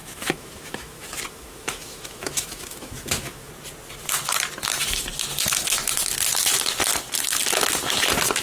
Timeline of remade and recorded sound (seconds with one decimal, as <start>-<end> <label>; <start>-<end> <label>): 0.0-3.5 remade; 3.5-8.4 recorded